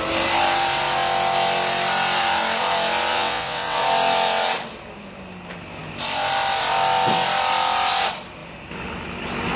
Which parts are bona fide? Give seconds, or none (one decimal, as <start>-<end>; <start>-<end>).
0.0-3.1; 3.8-9.6